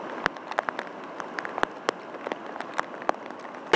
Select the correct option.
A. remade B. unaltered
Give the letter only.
B